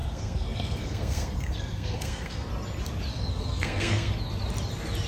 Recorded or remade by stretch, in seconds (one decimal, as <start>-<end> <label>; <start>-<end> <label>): 0.0-2.5 remade; 2.5-3.1 recorded; 3.1-4.1 remade; 4.1-5.1 recorded